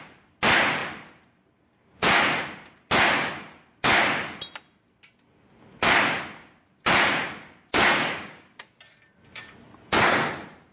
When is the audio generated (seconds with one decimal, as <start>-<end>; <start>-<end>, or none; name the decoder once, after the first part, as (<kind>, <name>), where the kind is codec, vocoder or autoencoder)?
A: 7.7-8.6 (codec, DAC)